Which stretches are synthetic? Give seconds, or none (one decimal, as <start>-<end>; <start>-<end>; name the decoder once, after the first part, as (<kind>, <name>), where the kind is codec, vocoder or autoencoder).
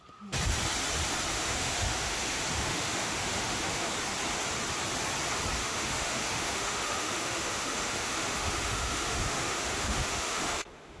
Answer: 1.3-3.9 (autoencoder, DAC-VAE); 5.6-11.0